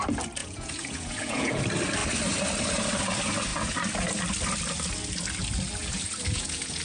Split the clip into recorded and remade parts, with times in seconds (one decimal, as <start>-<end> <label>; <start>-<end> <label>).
0.0-0.4 recorded; 0.4-1.6 remade; 1.6-5.8 recorded; 5.8-6.8 remade